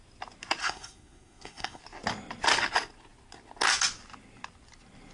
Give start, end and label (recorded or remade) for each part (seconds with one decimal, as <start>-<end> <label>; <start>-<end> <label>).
0.0-0.6 recorded; 0.6-1.8 remade; 1.8-5.1 recorded